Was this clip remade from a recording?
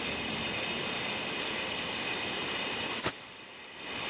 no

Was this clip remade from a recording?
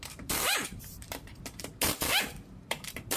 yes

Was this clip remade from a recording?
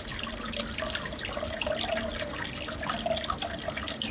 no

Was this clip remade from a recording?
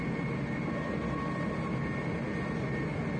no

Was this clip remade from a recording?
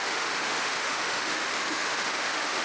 yes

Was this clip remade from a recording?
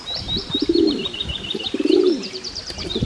yes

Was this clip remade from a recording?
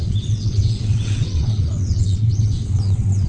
yes